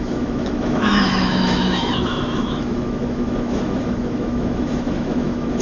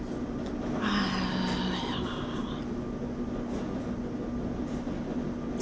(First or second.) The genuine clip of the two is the second